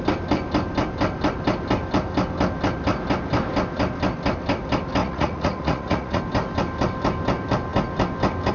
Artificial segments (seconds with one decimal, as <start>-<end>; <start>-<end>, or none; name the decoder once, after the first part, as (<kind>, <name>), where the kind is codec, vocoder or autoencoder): 5.0-6.2 (vocoder, Vocos)